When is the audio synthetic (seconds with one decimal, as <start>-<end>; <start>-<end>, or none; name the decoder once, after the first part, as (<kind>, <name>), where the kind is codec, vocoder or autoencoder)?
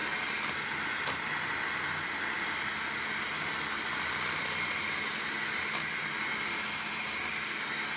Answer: none